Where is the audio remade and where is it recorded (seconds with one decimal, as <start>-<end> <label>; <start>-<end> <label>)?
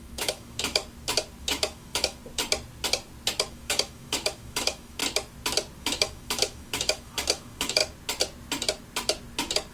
0.0-0.8 remade; 0.8-1.4 recorded; 1.4-2.2 remade; 2.2-3.5 recorded; 3.5-5.0 remade; 5.0-5.8 recorded; 5.8-7.8 remade; 7.8-9.7 recorded